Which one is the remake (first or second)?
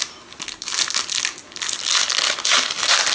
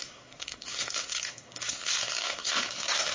second